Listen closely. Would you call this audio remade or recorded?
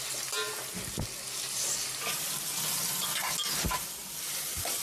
recorded